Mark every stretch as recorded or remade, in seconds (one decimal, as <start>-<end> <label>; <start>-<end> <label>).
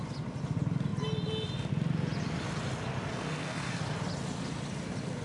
0.0-3.1 recorded; 3.1-3.8 remade; 3.8-5.2 recorded